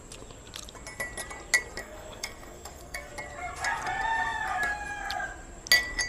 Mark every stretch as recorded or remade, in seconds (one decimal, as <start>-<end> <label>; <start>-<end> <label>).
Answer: 0.0-1.8 recorded; 1.8-3.1 remade; 3.1-6.1 recorded